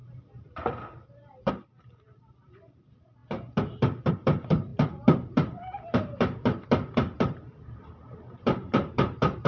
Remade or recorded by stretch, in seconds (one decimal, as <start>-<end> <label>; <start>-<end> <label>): 0.0-3.2 remade; 3.2-4.1 recorded; 4.1-9.5 remade